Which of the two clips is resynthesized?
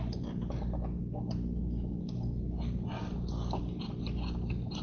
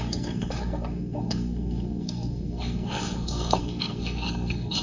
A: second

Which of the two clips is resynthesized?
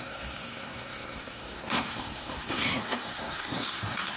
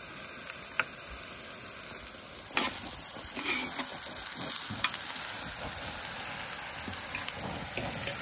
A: first